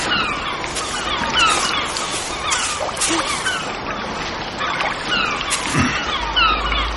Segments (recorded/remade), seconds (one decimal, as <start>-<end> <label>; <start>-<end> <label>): 0.0-7.0 recorded